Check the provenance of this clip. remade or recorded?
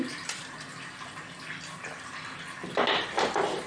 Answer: recorded